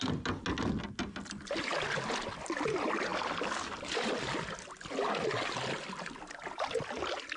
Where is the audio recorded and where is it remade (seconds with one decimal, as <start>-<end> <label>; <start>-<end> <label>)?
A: 0.0-7.4 recorded